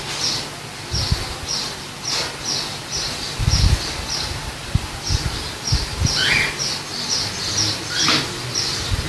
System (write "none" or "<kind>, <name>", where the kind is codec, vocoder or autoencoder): none